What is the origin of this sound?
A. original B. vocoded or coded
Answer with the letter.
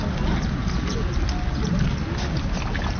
A